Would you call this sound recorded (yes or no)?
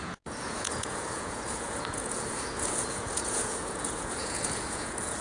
no